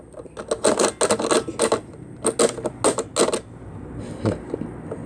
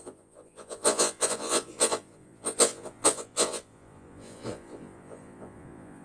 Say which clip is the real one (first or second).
first